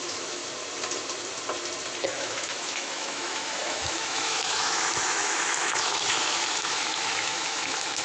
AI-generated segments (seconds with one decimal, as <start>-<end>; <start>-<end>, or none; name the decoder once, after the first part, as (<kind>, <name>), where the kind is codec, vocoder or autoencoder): 0.0-0.4 (autoencoder, DAC-VAE); 2.0-8.0